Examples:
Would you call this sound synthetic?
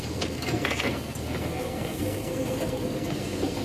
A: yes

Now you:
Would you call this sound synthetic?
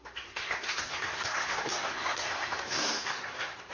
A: yes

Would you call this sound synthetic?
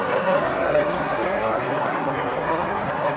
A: yes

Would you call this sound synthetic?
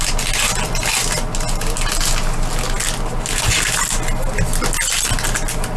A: no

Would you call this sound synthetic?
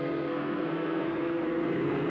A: yes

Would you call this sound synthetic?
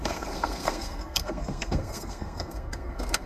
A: yes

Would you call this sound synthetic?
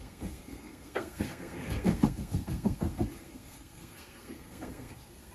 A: yes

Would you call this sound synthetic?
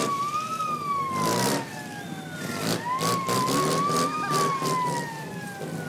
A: no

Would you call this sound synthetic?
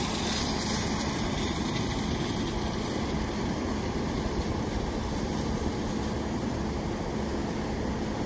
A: no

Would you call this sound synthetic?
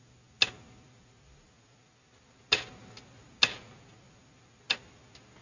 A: no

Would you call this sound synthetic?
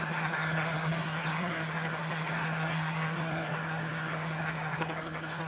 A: yes